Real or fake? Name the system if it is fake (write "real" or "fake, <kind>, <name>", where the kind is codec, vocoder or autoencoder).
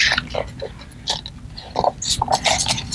real